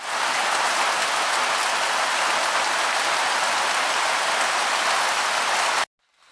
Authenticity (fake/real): real